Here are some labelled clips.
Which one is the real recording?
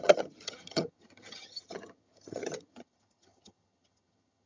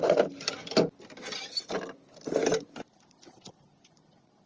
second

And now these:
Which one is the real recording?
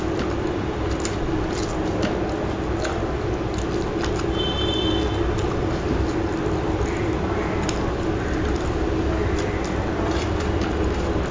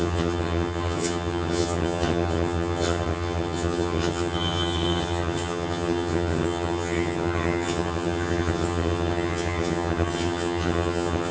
first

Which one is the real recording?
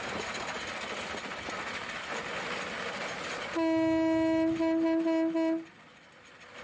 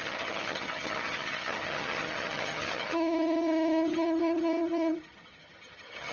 first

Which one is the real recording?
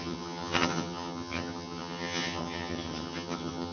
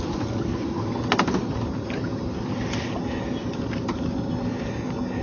second